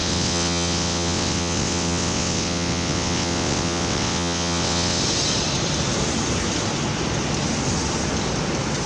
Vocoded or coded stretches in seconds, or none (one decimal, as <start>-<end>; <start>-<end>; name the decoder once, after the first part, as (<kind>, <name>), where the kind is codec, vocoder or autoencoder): 0.0-5.0 (vocoder, WaveNeXt)